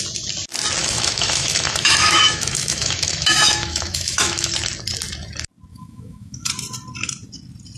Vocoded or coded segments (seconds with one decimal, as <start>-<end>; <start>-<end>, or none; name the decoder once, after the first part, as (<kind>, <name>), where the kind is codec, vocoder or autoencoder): 0.8-4.5 (autoencoder, DAC-VAE); 5.7-6.5